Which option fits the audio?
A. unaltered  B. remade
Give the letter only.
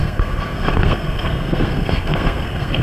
B